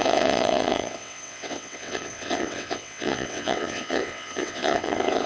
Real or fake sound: fake